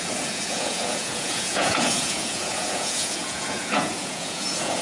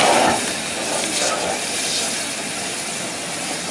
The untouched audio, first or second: second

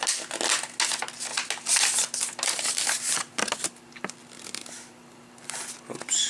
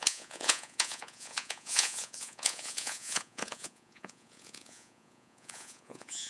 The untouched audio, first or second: first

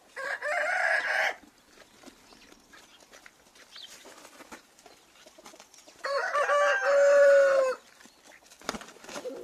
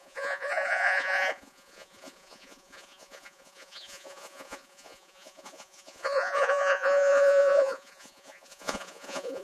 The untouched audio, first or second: first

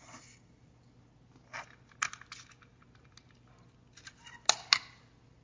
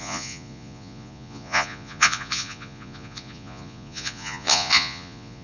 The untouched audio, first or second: first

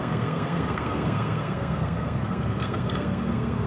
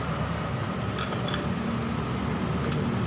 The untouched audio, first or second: second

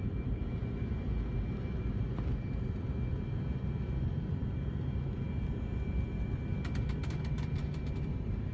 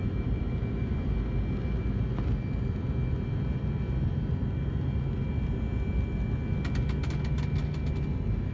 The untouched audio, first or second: second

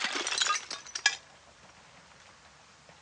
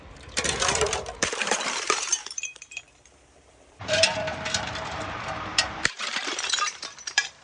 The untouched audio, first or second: first